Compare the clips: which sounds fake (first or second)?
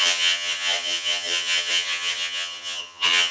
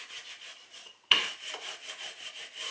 first